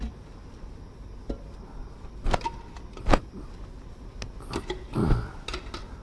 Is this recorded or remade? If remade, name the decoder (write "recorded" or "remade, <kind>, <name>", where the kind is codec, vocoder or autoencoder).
recorded